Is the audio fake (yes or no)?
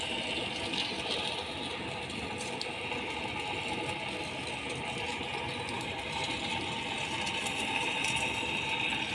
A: no